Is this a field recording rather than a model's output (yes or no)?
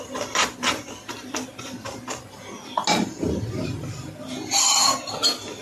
yes